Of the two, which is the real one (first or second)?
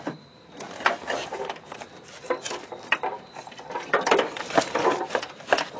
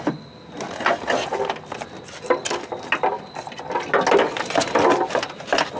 second